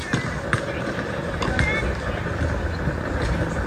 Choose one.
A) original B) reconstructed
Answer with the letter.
A